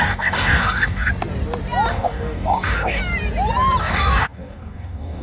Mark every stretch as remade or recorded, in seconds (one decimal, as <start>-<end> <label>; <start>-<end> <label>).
0.0-1.1 remade; 1.1-1.9 recorded; 1.9-3.0 remade; 3.0-3.8 recorded; 3.8-5.2 remade